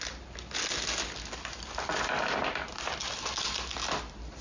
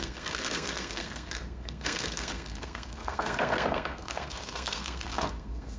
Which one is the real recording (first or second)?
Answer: first